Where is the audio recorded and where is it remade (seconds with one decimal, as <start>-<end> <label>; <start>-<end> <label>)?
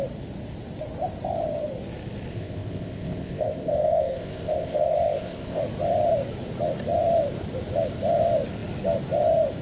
0.0-2.3 recorded; 2.3-5.6 remade; 5.6-9.6 recorded